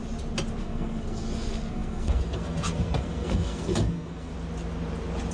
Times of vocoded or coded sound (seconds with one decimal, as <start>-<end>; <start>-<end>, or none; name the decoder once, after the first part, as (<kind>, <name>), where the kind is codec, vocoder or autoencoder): 0.6-4.3 (codec, SNAC)